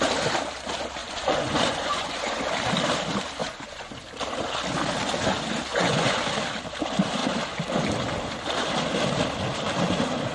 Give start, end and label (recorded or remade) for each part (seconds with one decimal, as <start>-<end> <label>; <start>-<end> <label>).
0.0-1.0 recorded; 1.0-2.4 remade; 2.4-3.4 recorded; 3.4-4.1 remade; 4.1-5.7 recorded; 5.7-6.2 remade; 6.2-10.3 recorded